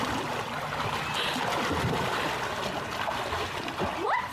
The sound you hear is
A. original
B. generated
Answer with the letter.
A